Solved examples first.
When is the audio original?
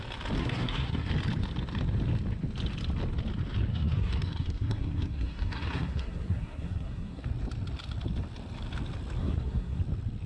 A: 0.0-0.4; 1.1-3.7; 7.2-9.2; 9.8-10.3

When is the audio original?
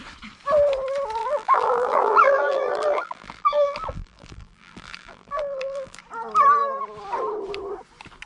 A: 0.0-1.2; 6.0-8.3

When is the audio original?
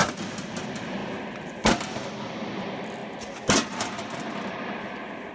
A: 0.0-5.3